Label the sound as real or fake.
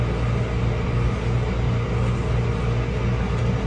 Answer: real